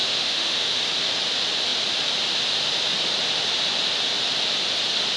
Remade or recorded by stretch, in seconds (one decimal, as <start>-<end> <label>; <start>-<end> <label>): 0.0-0.8 remade; 0.8-5.2 recorded